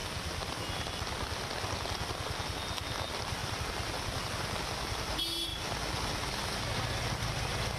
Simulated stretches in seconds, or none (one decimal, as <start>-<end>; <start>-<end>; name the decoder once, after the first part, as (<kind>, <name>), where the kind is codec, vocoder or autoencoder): 0.0-1.6 (vocoder, BigVGAN v2); 3.4-5.1